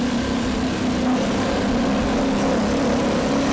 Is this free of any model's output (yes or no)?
yes